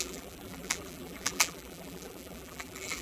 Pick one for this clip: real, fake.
fake